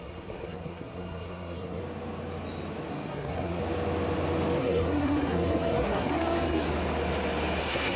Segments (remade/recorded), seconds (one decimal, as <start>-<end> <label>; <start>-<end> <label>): 0.0-1.8 remade; 1.8-2.9 recorded; 2.9-3.6 remade; 3.6-4.6 recorded; 4.6-6.7 remade; 6.7-7.6 recorded; 7.6-8.0 remade